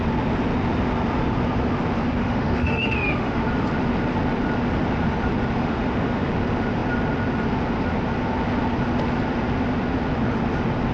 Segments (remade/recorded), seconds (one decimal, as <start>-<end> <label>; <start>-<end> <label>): 0.0-2.2 recorded; 2.2-3.4 remade; 3.4-5.6 recorded; 5.6-6.3 remade; 6.3-10.9 recorded